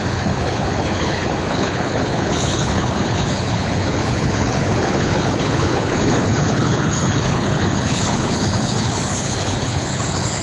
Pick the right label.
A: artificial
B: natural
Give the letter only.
A